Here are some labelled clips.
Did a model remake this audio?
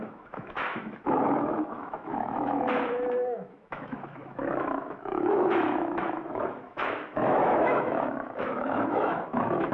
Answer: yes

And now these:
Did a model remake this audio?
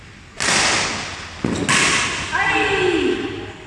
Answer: no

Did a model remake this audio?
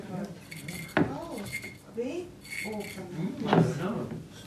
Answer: no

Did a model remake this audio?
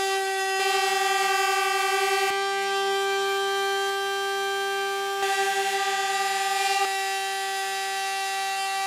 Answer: no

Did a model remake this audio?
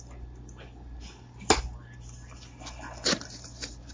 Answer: no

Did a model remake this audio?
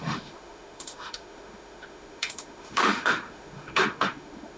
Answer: yes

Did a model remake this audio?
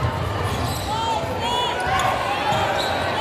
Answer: no